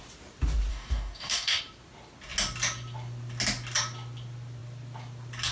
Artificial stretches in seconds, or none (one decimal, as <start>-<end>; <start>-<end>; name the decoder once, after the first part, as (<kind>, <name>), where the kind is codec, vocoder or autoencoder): 0.7-1.6 (codec, DAC)